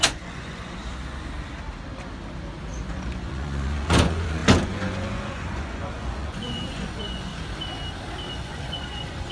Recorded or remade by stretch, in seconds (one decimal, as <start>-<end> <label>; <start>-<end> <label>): 0.0-0.8 remade; 0.8-2.8 recorded; 2.8-7.3 remade; 7.3-8.3 recorded; 8.3-9.3 remade